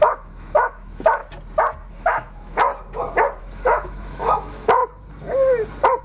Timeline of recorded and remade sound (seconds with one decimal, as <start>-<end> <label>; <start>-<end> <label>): 0.0-1.2 remade; 1.2-1.9 recorded; 1.9-2.7 remade; 2.7-3.4 recorded; 3.4-4.8 remade; 4.8-6.0 recorded